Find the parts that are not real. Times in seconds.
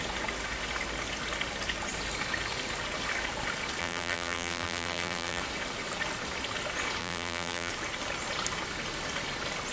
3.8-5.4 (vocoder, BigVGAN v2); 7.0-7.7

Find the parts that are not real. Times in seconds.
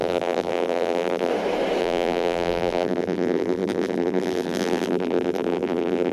0.0-1.3 (vocoder, BigVGAN v2); 1.8-6.1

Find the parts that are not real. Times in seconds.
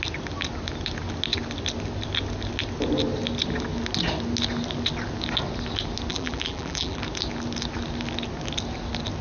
6.1-7.0 (vocoder, BigVGAN v2)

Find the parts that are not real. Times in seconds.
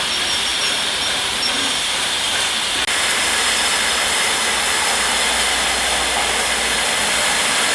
0.5-2.5 (vocoder, BigVGAN v2); 3.7-4.3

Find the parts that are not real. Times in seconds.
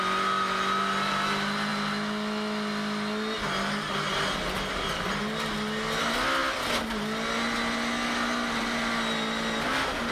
none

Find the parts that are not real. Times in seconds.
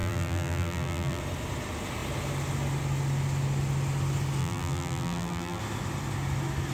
0.0-1.2 (vocoder, BigVGAN v2); 4.4-5.6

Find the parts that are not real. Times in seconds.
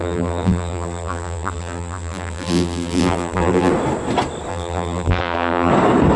0.0-3.7 (vocoder, BigVGAN v2); 4.5-5.7